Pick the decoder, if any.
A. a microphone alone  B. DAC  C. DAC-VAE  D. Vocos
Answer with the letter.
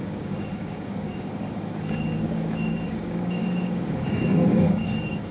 B